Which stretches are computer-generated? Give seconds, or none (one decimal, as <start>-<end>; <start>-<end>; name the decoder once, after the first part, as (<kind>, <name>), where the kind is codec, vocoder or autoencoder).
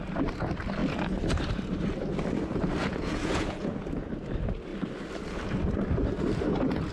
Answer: 2.8-4.1 (vocoder, Vocos)